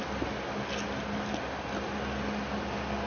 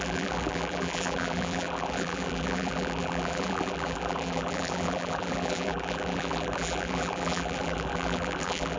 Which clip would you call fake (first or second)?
second